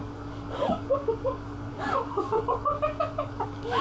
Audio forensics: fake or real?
fake